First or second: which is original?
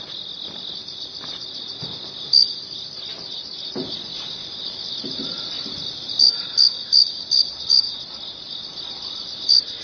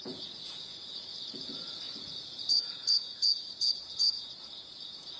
first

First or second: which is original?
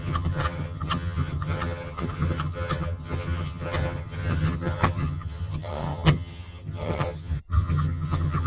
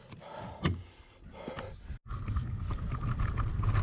second